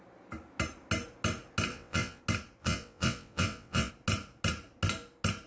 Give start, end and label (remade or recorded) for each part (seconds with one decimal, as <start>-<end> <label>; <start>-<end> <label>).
0.0-1.7 recorded; 1.7-2.2 remade; 2.2-2.6 recorded; 2.6-3.9 remade; 3.9-5.5 recorded